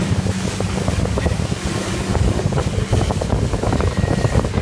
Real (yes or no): no